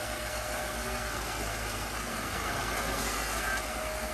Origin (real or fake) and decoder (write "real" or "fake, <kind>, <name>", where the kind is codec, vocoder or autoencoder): fake, codec, SNAC